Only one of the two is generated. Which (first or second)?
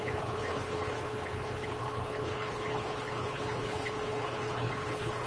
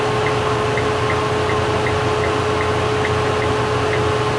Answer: first